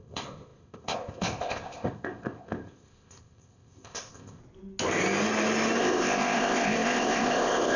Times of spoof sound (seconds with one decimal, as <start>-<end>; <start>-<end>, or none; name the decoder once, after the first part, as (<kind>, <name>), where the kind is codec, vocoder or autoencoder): 0.0-4.4 (codec, ZipCodec); 5.8-7.8